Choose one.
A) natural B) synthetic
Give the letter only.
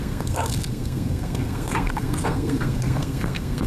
B